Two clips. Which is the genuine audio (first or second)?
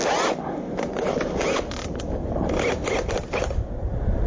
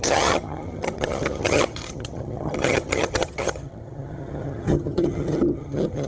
first